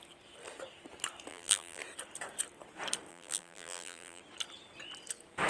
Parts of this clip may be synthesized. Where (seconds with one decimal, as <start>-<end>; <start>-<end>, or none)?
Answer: 1.3-1.8; 3.1-4.2